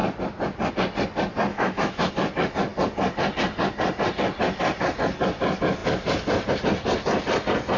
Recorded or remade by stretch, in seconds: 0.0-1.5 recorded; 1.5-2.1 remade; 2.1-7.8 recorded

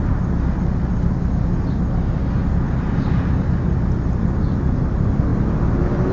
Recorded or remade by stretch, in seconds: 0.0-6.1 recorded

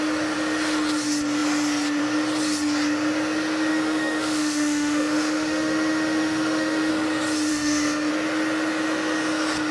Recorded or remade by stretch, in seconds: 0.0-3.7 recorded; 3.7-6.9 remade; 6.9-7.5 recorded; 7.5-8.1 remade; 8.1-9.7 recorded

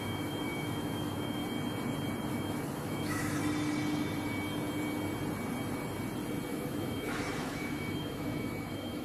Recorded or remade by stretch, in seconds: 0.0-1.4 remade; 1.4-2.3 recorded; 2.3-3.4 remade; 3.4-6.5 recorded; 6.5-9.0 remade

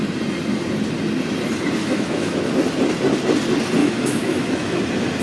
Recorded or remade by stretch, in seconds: 0.0-1.8 recorded; 1.8-2.5 remade; 2.5-3.8 recorded; 3.8-4.8 remade; 4.8-5.2 recorded